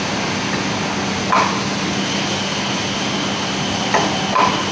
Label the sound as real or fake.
real